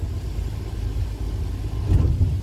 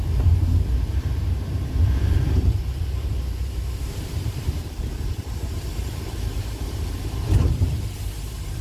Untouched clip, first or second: first